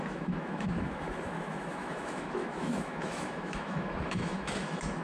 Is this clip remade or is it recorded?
remade